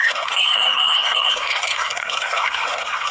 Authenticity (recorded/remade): remade